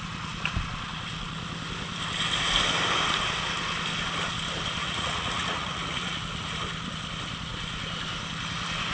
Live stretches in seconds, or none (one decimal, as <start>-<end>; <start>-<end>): 0.0-4.8; 6.2-8.9